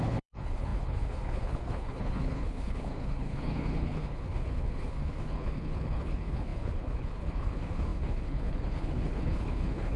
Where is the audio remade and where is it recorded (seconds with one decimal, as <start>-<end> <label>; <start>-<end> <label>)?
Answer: 0.0-10.0 remade